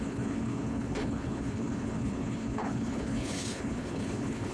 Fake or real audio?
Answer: fake